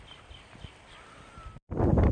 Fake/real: real